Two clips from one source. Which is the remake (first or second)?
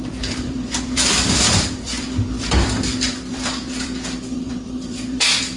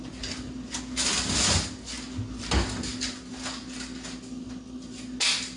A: first